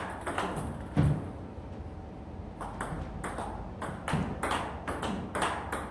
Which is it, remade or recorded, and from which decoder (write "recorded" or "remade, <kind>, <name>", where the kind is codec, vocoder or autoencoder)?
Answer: recorded